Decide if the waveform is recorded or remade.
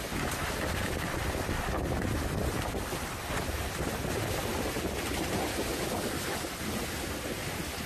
recorded